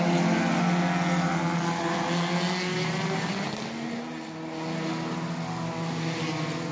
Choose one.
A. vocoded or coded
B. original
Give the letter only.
B